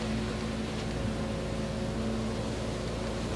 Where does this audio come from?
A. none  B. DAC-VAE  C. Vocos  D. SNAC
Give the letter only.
A